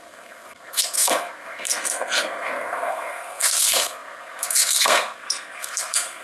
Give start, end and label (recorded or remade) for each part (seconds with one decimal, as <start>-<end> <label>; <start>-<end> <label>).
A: 0.0-6.2 remade